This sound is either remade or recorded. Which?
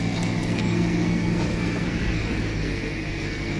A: remade